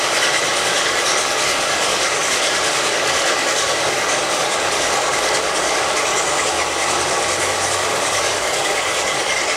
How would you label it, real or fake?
fake